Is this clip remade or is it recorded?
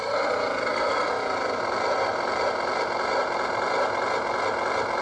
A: recorded